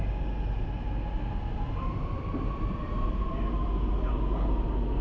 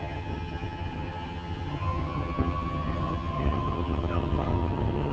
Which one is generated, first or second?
second